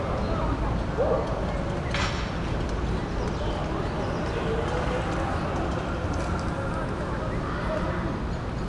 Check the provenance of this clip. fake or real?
real